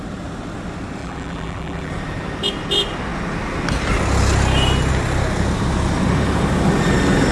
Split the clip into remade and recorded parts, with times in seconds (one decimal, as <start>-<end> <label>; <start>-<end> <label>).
0.0-1.0 recorded; 1.0-1.9 remade; 1.9-7.3 recorded